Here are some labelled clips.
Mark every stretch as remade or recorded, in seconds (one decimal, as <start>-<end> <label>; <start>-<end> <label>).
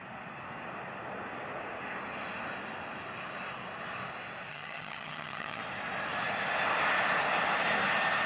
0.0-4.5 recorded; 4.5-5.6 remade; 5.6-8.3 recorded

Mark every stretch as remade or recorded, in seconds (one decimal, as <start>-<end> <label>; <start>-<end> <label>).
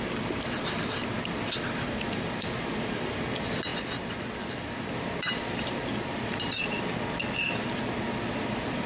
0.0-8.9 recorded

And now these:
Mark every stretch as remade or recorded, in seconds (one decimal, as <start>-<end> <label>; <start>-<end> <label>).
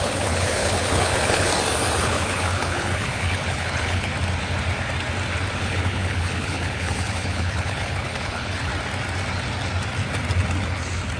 0.0-1.5 remade; 1.5-2.0 recorded; 2.0-4.1 remade; 4.1-5.6 recorded; 5.6-8.7 remade; 8.7-11.2 recorded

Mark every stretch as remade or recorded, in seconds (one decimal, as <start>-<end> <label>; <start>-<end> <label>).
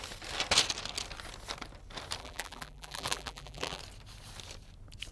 0.0-2.2 recorded; 2.2-3.8 remade; 3.8-5.1 recorded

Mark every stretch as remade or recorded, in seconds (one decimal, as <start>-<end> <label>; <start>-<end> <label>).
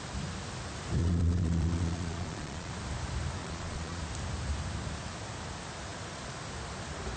0.0-1.0 recorded; 1.0-2.7 remade; 2.7-3.4 recorded; 3.4-4.0 remade; 4.0-7.2 recorded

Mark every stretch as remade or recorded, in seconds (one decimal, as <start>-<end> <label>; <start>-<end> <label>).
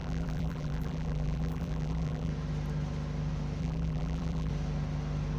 0.0-2.3 remade; 2.3-3.6 recorded; 3.6-4.5 remade; 4.5-5.4 recorded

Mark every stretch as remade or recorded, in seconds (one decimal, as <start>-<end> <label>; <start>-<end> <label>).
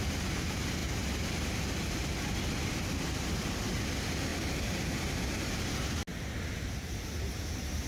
0.0-7.9 recorded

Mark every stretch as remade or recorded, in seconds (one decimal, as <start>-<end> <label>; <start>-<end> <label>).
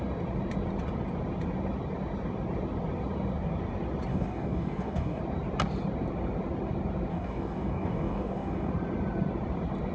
0.0-4.1 recorded; 4.1-5.2 remade; 5.2-7.1 recorded; 7.1-8.7 remade; 8.7-9.9 recorded